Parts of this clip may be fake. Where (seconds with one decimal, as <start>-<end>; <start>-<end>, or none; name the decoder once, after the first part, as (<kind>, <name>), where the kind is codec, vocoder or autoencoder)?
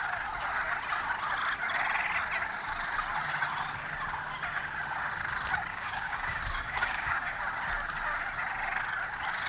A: 5.7-7.4 (codec, DAC)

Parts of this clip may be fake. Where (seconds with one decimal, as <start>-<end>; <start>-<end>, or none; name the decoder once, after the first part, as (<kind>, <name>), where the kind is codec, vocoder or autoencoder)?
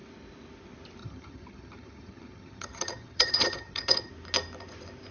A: 1.0-4.1 (vocoder, HiFi-GAN)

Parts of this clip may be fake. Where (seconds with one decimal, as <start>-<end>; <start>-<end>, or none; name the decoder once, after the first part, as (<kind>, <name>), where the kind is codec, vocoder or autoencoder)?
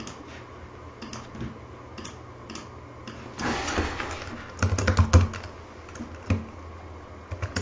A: none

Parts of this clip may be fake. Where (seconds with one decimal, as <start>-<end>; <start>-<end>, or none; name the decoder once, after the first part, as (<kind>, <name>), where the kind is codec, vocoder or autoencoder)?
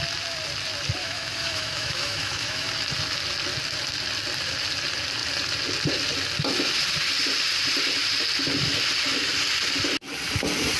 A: 1.0-2.7 (autoencoder, DAC-VAE)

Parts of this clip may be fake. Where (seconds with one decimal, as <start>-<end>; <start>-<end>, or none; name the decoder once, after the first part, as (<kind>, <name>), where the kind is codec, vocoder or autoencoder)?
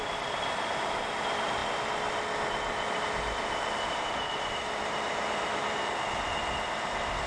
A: none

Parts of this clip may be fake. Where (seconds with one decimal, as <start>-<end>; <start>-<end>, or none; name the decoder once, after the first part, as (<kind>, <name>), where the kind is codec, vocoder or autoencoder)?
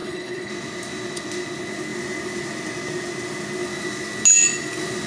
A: 0.0-0.5 (codec, HILCodec)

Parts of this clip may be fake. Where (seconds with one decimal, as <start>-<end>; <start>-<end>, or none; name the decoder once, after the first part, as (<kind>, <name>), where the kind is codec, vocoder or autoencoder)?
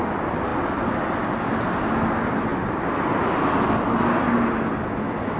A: none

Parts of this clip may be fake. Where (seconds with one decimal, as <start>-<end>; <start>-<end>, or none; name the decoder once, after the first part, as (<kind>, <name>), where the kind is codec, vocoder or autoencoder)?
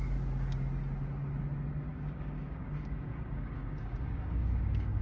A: 1.9-5.0 (codec, DAC)